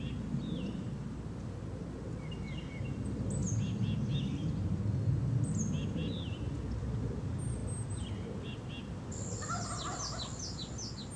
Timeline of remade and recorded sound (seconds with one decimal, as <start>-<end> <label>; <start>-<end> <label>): 0.0-11.2 recorded